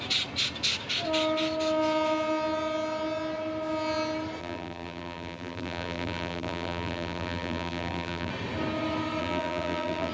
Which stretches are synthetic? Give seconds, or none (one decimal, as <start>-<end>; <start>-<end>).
4.4-8.3; 9.2-10.1